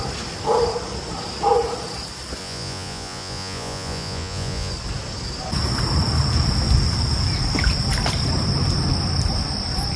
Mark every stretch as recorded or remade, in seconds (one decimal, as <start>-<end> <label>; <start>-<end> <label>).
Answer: 0.0-2.4 recorded; 2.4-4.7 remade; 4.7-10.0 recorded